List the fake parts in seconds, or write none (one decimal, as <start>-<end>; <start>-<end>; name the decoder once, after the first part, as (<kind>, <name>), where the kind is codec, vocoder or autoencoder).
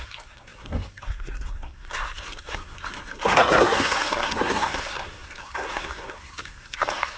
0.0-7.2 (codec, SNAC)